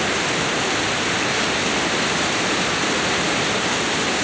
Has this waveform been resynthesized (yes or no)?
no